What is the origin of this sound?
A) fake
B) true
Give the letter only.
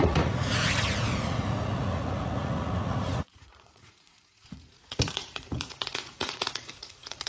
A